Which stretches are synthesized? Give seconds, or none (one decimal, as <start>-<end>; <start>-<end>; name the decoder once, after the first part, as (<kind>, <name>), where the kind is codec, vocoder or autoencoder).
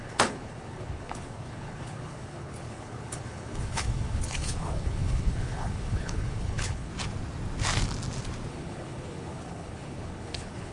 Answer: 0.0-6.9 (codec, HILCodec); 8.5-10.7